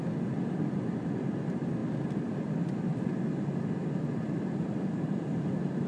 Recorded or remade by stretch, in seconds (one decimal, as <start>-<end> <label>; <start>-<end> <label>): 0.0-1.8 recorded; 1.8-3.2 remade; 3.2-3.8 recorded; 3.8-5.3 remade; 5.3-5.9 recorded